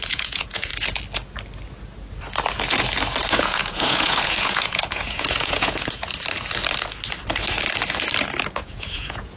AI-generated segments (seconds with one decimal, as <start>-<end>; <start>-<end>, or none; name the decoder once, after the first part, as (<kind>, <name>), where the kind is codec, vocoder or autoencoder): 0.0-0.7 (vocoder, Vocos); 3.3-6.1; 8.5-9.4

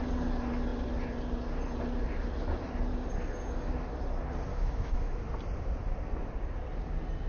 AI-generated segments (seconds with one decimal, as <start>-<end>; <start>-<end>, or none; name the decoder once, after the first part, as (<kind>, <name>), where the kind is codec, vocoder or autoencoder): 4.5-5.2 (autoencoder, DAC-VAE)

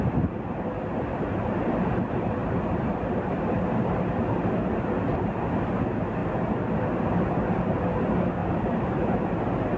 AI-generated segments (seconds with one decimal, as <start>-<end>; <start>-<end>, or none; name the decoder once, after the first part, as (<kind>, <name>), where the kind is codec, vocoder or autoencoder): 2.4-3.4 (vocoder, BigVGAN v2); 6.2-6.8; 8.4-9.3